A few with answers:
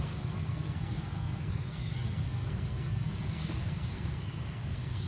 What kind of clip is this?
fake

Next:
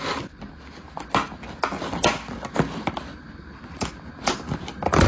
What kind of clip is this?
real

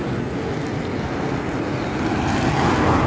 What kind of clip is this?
real